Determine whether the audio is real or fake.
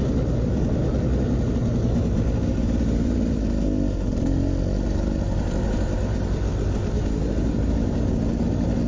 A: real